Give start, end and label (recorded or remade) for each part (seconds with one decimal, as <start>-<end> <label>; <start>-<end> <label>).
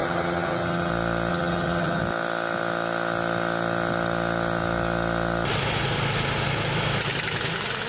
0.0-0.9 remade; 0.9-1.3 recorded; 1.3-2.0 remade; 2.0-7.9 recorded